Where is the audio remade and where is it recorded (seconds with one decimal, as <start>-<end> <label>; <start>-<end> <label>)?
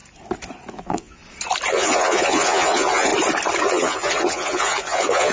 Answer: 0.0-0.7 recorded; 0.7-1.2 remade; 1.2-1.7 recorded; 1.7-3.1 remade; 3.1-3.6 recorded; 3.6-5.3 remade